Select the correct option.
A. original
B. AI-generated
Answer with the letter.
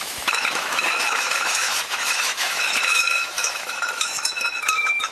B